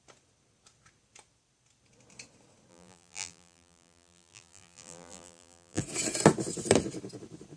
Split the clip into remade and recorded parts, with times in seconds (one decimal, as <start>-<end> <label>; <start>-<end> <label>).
0.0-2.7 recorded; 2.7-5.8 remade; 5.8-7.6 recorded